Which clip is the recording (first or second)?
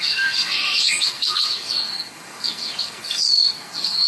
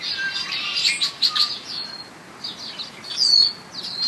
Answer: second